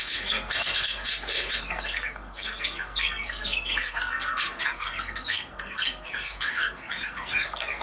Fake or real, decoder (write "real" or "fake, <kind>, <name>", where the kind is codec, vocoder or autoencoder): fake, codec, SNAC